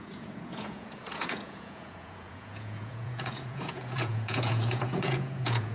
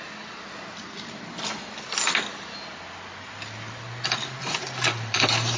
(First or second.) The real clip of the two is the second